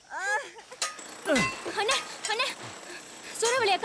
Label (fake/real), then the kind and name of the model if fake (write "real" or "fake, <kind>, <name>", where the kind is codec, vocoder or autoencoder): real